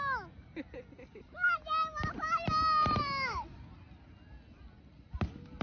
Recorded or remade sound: recorded